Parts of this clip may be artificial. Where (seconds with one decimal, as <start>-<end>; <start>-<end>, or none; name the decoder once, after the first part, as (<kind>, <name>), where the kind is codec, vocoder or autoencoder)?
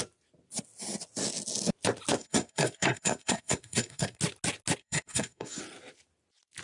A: 2.2-4.2 (codec, SNAC); 4.8-5.6